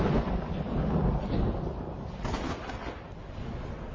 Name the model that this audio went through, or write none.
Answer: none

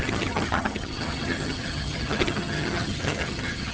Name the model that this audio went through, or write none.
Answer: vocoder, HiFi-GAN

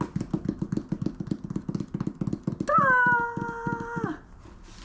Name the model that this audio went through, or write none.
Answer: none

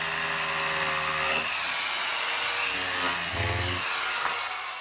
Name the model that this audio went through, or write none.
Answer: none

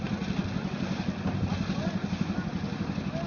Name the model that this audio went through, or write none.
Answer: none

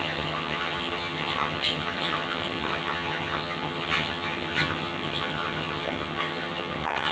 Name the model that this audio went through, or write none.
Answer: vocoder, HiFi-GAN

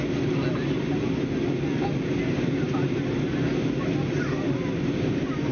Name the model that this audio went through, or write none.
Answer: none